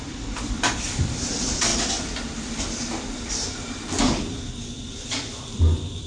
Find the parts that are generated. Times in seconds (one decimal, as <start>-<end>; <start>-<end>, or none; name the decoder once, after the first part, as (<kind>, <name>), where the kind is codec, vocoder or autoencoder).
0.0-6.1 (vocoder, BigVGAN v2)